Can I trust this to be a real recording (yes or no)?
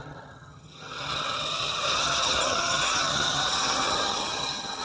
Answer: no